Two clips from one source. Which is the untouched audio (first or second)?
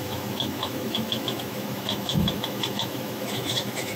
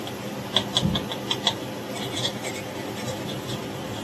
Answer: second